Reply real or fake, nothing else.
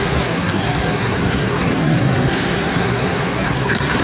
fake